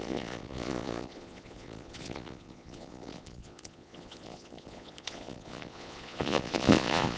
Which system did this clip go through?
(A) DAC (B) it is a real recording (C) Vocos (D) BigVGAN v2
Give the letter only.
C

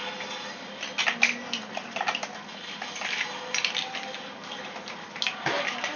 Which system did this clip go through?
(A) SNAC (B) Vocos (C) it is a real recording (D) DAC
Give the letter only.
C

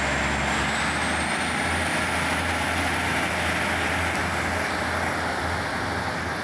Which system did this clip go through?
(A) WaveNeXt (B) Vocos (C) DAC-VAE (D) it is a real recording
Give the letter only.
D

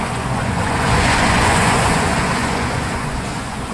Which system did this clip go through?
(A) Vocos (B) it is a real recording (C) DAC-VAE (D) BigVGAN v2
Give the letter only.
A